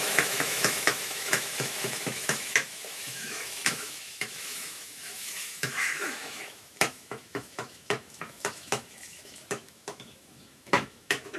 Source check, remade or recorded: remade